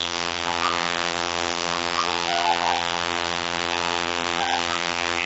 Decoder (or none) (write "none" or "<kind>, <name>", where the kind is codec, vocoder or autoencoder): vocoder, BigVGAN v2